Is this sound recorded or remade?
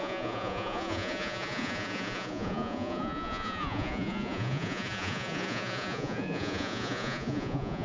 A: remade